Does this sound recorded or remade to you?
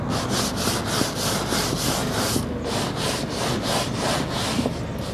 recorded